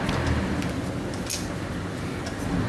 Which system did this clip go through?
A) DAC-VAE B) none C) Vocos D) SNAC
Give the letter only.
B